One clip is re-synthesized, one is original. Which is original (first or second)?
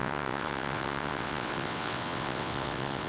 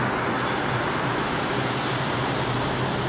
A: second